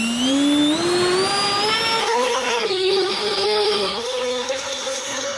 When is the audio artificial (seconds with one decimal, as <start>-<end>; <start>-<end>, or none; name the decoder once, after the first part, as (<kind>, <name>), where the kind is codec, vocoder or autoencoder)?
2.0-5.4 (codec, SNAC)